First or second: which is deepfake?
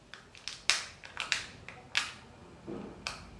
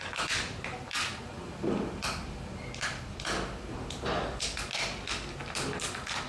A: second